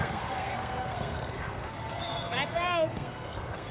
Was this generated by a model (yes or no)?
yes